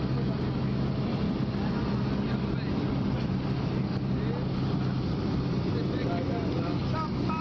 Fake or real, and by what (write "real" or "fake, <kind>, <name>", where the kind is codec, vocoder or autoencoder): real